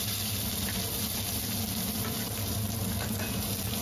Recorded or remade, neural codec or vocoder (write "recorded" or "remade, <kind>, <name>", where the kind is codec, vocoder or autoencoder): recorded